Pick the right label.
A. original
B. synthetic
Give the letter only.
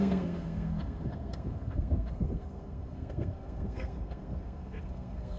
B